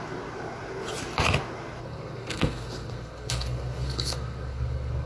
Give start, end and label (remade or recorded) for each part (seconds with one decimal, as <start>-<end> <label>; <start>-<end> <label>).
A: 0.0-1.8 recorded; 1.8-5.1 remade